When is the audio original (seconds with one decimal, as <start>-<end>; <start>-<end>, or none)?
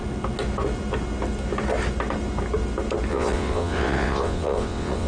0.0-3.1